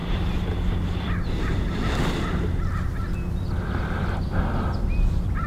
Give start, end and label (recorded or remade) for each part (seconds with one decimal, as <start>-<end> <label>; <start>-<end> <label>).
0.0-5.5 recorded